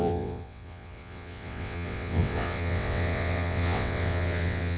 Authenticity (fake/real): fake